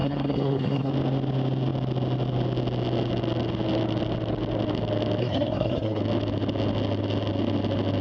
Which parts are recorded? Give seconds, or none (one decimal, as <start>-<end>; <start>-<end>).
0.9-5.2; 6.0-8.0